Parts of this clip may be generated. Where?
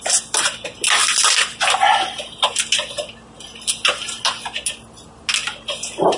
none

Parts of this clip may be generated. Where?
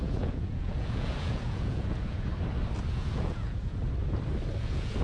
0.0-2.3 (vocoder, Vocos); 2.9-3.8; 4.6-5.0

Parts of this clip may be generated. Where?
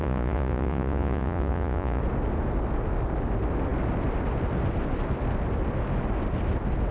0.0-2.0 (vocoder, Vocos)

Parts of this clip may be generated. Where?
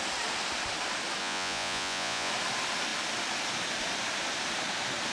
1.2-2.3 (vocoder, Vocos)